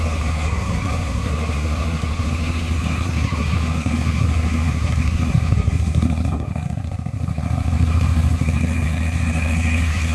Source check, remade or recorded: remade